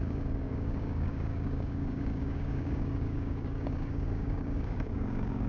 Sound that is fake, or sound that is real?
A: fake